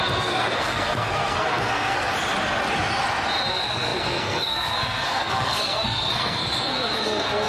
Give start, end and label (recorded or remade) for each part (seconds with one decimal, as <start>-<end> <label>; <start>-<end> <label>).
0.0-2.1 remade; 2.1-3.5 recorded; 3.5-7.5 remade